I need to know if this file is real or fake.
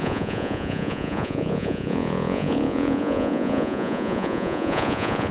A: fake